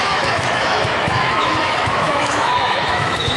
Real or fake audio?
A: fake